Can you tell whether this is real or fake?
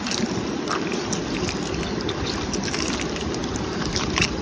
real